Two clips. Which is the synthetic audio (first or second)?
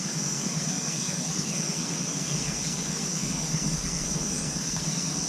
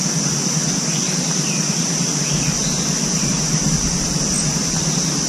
first